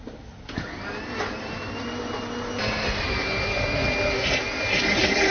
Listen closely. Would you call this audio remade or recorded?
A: recorded